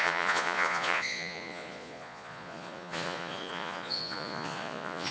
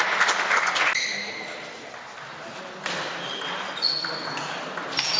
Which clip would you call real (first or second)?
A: second